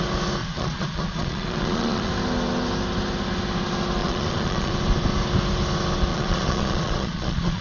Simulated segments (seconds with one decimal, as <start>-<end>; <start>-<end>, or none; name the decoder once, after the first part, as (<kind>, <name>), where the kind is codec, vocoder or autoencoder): 0.4-2.1 (vocoder, Vocos); 4.0-4.7; 6.1-7.6